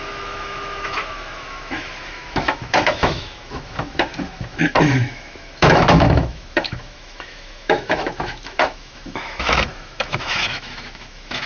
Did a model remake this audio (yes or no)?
yes